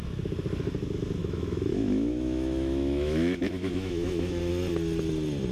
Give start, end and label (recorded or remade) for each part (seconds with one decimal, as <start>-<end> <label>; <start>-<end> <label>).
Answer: 0.0-1.2 recorded; 1.2-4.5 remade; 4.5-5.5 recorded